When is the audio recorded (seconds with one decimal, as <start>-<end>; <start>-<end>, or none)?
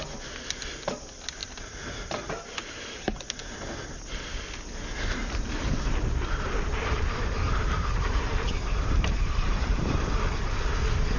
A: 0.0-1.4; 3.2-5.2; 10.1-11.2